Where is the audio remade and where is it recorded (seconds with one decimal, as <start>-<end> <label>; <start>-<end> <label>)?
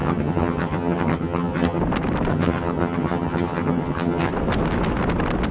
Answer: 0.0-1.8 remade; 1.8-2.3 recorded; 2.3-4.3 remade; 4.3-5.5 recorded